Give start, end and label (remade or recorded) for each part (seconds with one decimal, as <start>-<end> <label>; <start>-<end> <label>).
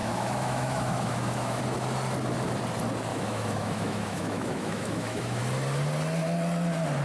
0.0-1.6 remade; 1.6-3.1 recorded; 3.1-5.4 remade; 5.4-7.0 recorded